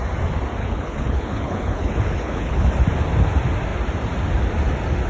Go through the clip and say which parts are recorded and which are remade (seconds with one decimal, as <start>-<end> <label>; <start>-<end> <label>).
0.0-0.6 recorded; 0.6-2.7 remade; 2.7-5.1 recorded